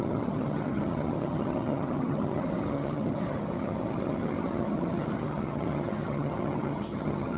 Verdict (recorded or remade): remade